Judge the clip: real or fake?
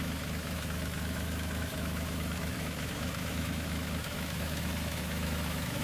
fake